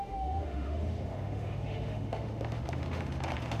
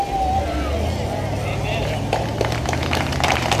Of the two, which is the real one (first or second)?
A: second